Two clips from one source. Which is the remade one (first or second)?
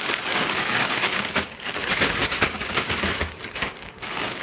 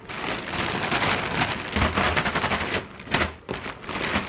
first